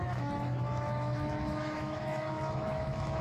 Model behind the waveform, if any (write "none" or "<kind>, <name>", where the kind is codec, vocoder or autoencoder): autoencoder, DAC-VAE